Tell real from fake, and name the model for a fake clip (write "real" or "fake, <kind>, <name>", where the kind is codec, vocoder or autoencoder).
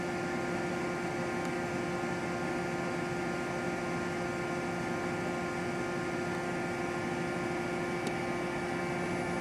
real